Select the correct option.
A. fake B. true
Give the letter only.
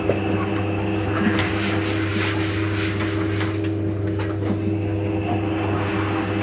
B